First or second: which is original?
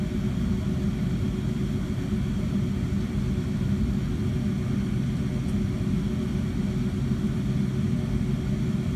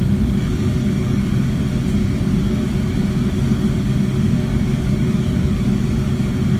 first